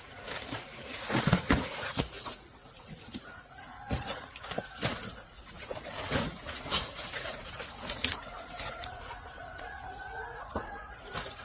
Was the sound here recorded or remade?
remade